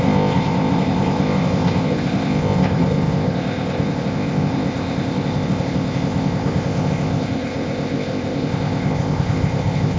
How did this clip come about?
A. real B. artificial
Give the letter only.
B